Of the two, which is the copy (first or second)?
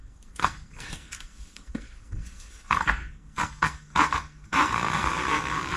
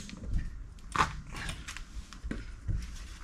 first